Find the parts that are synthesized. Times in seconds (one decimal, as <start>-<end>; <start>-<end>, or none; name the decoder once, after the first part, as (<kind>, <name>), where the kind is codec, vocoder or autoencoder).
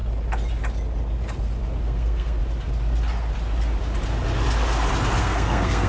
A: 1.8-2.4 (codec, SNAC); 5.2-5.9